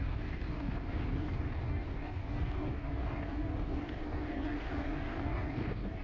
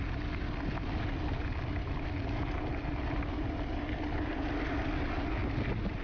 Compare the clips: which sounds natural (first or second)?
second